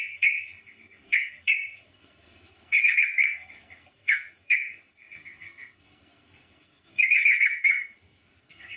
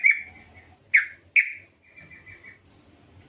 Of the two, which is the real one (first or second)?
second